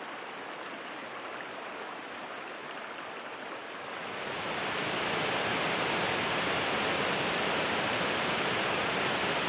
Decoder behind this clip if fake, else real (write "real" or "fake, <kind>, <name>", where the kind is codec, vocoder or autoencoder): real